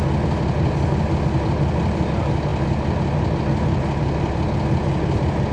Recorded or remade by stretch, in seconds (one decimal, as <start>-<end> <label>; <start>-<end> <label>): 0.0-5.5 recorded